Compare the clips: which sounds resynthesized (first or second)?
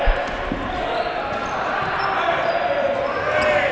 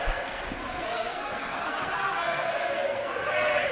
second